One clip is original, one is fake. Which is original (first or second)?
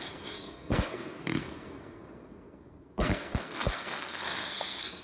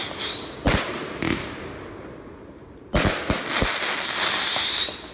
second